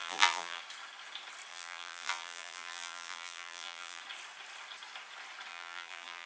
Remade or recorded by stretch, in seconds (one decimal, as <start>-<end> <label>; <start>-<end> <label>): 0.0-0.6 remade; 0.6-1.5 recorded; 1.5-4.0 remade; 4.0-5.5 recorded; 5.5-6.3 remade